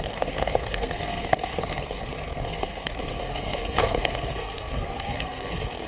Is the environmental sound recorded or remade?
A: remade